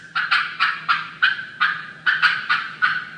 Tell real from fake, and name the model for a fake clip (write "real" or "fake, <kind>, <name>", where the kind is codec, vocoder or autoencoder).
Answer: real